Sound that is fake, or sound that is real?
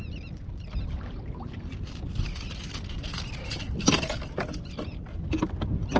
real